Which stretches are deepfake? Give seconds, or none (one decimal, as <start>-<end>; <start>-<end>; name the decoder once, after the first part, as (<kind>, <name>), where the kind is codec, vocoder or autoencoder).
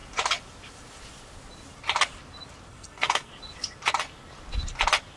2.7-3.3 (codec, SNAC)